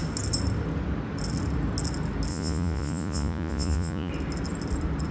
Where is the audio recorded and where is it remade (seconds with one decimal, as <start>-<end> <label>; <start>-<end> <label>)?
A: 0.0-2.3 recorded; 2.3-4.1 remade; 4.1-5.1 recorded